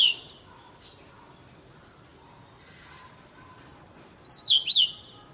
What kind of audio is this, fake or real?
real